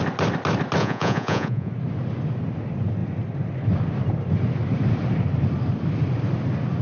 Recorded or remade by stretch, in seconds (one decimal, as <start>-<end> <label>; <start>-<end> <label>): 0.0-0.8 recorded; 0.8-1.7 remade; 1.7-6.8 recorded

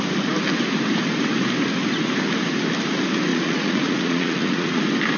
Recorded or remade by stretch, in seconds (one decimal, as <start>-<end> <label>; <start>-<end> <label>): 0.0-3.3 recorded; 3.3-4.8 remade; 4.8-5.2 recorded

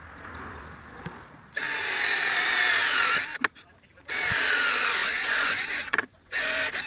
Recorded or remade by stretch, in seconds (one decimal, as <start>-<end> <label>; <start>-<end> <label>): 0.0-5.0 recorded; 5.0-6.5 remade; 6.5-6.9 recorded

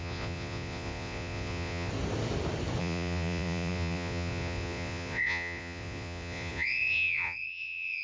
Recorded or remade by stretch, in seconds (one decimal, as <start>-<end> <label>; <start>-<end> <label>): 0.0-1.9 remade; 1.9-2.8 recorded; 2.8-8.0 remade

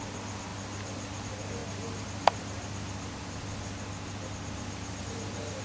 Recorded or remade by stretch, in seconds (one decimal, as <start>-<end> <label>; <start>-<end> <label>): 0.0-5.6 recorded

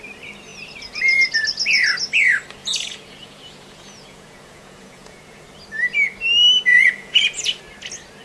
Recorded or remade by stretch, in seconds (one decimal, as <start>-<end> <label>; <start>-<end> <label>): 0.0-2.6 recorded; 2.6-5.4 remade; 5.4-6.7 recorded; 6.7-7.6 remade; 7.6-8.2 recorded

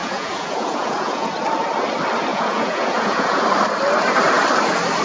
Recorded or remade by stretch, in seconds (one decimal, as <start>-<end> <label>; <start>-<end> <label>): 0.0-1.3 remade; 1.3-2.3 recorded; 2.3-3.4 remade; 3.4-5.0 recorded